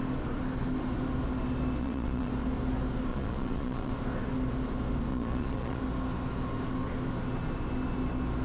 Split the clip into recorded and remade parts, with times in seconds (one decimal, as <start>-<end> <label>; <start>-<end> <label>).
0.0-1.8 recorded; 1.8-2.3 remade; 2.3-3.1 recorded; 3.1-3.9 remade; 3.9-5.1 recorded; 5.1-5.8 remade; 5.8-8.4 recorded

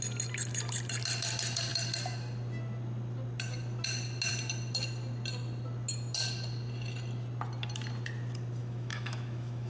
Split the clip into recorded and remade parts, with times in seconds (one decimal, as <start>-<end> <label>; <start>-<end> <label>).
0.0-8.6 recorded; 8.6-9.7 remade

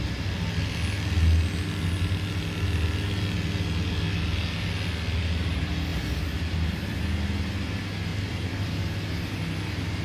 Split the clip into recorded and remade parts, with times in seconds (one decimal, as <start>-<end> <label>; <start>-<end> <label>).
0.0-5.9 recorded; 5.9-7.0 remade; 7.0-8.1 recorded; 8.1-8.8 remade; 8.8-10.0 recorded